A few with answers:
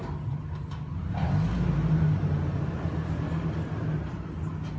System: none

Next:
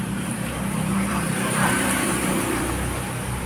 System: vocoder, BigVGAN v2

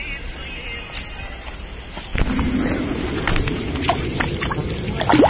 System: none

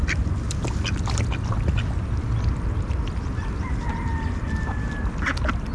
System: none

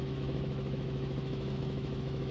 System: autoencoder, DAC-VAE